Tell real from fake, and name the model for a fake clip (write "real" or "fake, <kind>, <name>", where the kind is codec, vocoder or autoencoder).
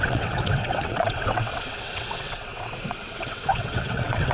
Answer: fake, vocoder, WaveNeXt